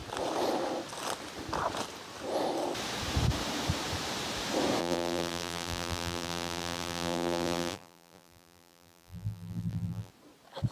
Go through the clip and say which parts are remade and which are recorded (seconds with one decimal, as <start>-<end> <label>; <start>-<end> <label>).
0.0-4.8 recorded; 4.8-10.1 remade; 10.1-10.7 recorded